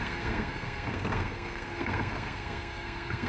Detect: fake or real fake